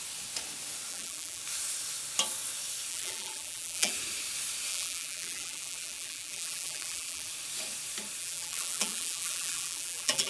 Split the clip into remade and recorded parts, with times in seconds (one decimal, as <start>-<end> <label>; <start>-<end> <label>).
0.0-0.9 recorded; 0.9-1.4 remade; 1.4-2.9 recorded; 2.9-3.9 remade; 3.9-4.7 recorded; 4.7-7.3 remade; 7.3-8.2 recorded; 8.2-10.3 remade